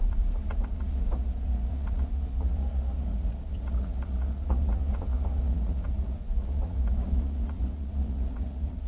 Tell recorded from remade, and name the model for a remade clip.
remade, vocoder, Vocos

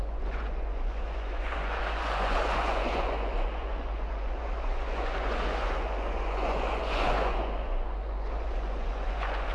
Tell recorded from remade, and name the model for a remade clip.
remade, vocoder, Vocos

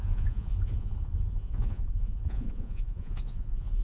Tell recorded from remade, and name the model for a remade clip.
remade, vocoder, Vocos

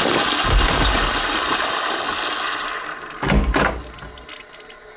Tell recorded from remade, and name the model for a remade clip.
recorded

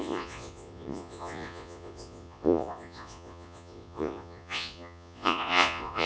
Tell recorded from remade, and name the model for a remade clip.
remade, vocoder, Vocos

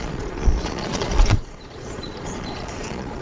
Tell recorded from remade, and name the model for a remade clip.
remade, vocoder, Vocos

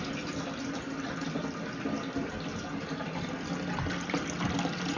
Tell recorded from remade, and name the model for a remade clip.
recorded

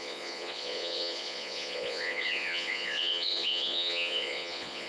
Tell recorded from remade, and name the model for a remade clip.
remade, vocoder, Vocos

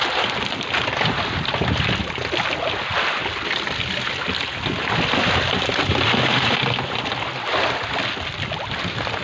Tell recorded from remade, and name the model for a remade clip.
recorded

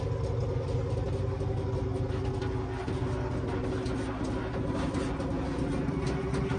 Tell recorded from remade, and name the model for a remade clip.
recorded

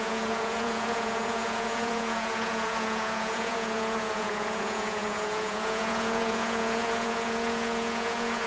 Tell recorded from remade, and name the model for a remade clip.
remade, vocoder, Vocos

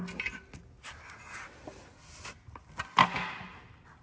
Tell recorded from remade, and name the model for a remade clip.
recorded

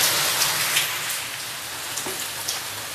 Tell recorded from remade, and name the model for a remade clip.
recorded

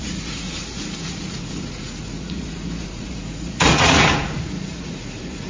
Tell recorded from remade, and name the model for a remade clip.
remade, vocoder, Vocos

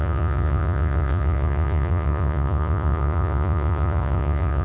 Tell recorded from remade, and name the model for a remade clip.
remade, vocoder, Vocos